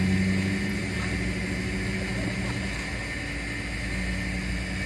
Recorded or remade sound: recorded